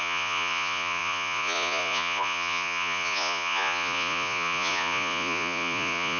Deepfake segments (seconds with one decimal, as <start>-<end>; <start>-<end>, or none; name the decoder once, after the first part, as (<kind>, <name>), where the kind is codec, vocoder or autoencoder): 0.0-6.2 (vocoder, Vocos)